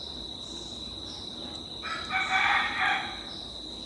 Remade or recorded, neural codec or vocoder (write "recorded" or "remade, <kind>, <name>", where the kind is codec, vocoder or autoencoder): recorded